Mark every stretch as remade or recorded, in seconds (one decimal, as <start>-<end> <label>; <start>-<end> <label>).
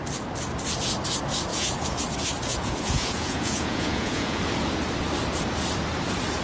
0.0-1.5 recorded; 1.5-2.0 remade; 2.0-2.5 recorded; 2.5-4.4 remade; 4.4-6.4 recorded